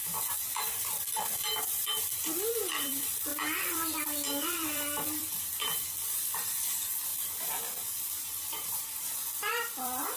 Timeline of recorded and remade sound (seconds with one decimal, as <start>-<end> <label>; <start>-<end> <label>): 0.0-7.1 remade; 7.1-7.8 recorded; 7.8-10.2 remade